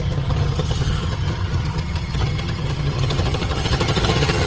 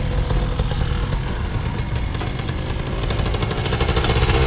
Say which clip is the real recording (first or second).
second